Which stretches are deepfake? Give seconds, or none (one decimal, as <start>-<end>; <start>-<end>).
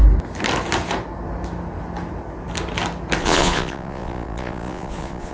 3.2-5.3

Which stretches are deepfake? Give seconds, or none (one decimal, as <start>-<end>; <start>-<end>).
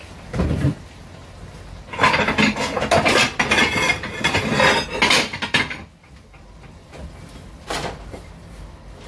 6.8-8.3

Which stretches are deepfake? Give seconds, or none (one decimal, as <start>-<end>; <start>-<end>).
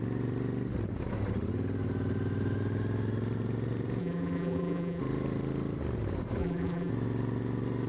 4.0-5.0; 6.4-6.9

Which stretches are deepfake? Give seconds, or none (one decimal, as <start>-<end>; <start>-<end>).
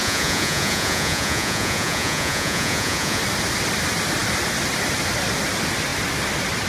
0.0-3.2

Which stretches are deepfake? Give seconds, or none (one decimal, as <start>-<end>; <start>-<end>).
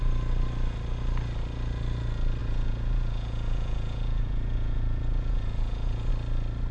2.4-6.1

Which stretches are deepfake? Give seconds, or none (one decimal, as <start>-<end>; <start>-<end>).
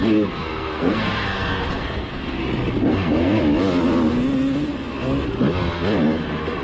0.0-2.4; 2.9-3.4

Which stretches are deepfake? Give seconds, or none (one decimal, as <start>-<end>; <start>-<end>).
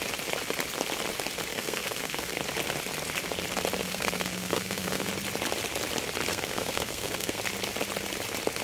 1.5-2.4; 3.8-5.1; 6.3-7.4